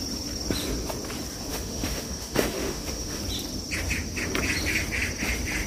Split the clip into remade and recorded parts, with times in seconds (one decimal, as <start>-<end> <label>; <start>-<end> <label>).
0.0-1.5 recorded; 1.5-3.2 remade; 3.2-5.7 recorded